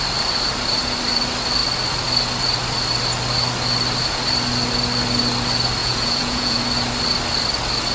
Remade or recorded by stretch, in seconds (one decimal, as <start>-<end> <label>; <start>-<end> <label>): 0.0-5.8 recorded; 5.8-6.6 remade; 6.6-7.9 recorded

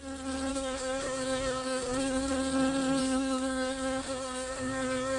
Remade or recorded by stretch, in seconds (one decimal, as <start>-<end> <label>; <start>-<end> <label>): 0.0-0.5 recorded; 0.5-2.3 remade; 2.3-3.0 recorded; 3.0-5.2 remade

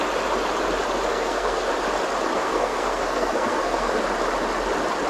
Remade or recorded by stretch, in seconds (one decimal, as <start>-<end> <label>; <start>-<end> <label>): 0.0-1.1 recorded; 1.1-1.7 remade; 1.7-2.3 recorded; 2.3-3.9 remade; 3.9-5.1 recorded

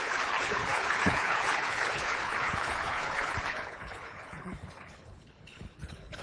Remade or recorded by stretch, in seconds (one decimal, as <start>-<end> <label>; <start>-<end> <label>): 0.0-6.2 remade

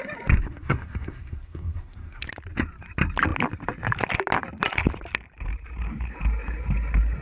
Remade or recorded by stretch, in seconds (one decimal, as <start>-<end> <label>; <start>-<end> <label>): 0.0-0.4 recorded; 0.4-2.2 remade; 2.2-7.2 recorded

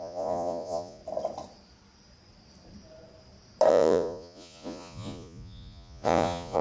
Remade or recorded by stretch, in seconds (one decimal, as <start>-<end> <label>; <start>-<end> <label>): 0.0-1.0 remade; 1.0-3.7 recorded; 3.7-6.6 remade

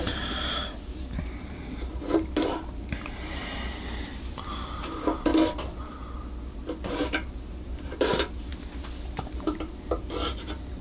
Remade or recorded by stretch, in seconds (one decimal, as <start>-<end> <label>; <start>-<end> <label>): 0.0-5.3 remade; 5.3-6.8 recorded; 6.8-10.8 remade

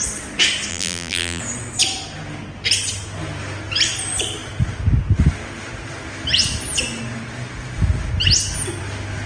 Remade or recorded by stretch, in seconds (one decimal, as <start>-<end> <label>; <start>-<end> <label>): 0.0-0.7 recorded; 0.7-1.4 remade; 1.4-9.3 recorded